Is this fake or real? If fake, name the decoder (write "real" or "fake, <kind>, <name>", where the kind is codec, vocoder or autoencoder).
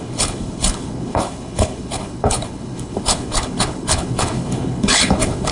fake, codec, HILCodec